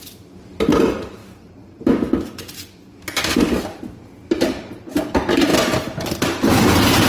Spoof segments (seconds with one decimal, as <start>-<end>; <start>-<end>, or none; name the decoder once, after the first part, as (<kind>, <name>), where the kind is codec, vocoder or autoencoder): none